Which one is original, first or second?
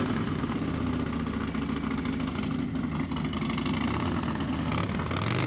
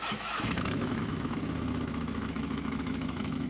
first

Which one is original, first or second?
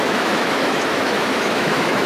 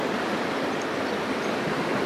second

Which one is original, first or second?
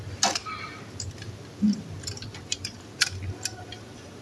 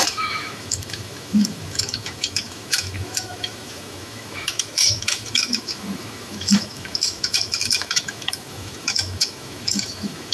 first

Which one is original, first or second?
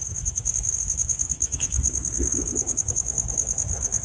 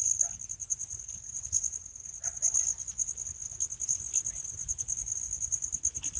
second